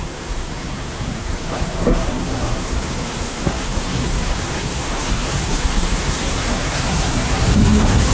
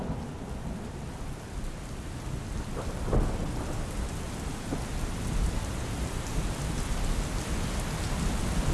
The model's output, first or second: first